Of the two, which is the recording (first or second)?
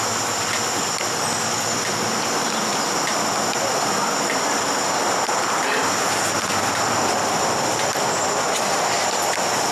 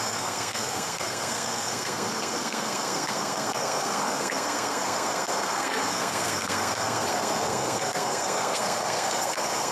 first